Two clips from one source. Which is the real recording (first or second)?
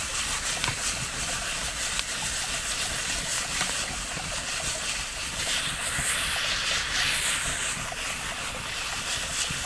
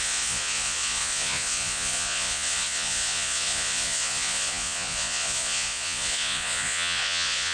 first